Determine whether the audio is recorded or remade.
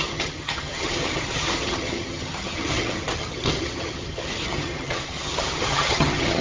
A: remade